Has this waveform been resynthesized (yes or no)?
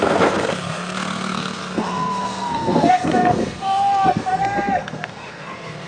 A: yes